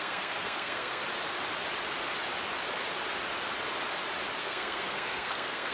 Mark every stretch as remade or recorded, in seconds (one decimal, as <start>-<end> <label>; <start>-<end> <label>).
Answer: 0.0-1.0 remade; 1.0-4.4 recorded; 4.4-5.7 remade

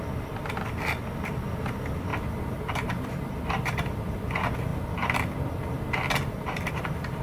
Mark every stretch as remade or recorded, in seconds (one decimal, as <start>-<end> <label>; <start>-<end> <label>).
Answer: 0.0-7.2 recorded

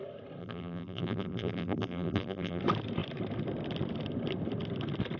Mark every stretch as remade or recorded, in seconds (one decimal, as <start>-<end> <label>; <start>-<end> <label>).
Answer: 0.0-0.4 recorded; 0.4-2.6 remade; 2.6-5.2 recorded

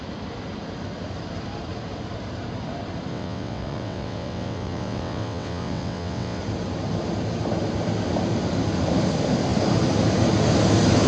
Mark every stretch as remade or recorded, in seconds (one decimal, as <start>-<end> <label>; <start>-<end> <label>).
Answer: 0.0-3.1 recorded; 3.1-6.4 remade; 6.4-11.1 recorded

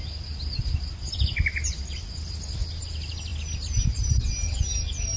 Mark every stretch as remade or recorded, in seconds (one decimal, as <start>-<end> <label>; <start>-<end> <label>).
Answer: 0.0-5.2 recorded

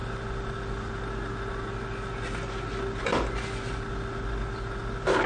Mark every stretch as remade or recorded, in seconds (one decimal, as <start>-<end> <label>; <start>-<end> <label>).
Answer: 0.0-5.3 recorded